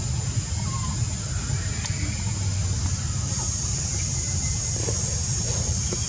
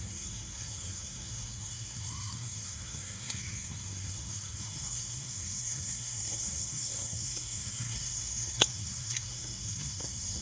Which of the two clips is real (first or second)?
first